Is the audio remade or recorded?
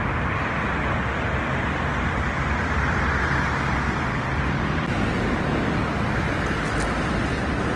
recorded